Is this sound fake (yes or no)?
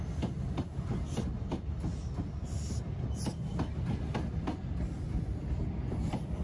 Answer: no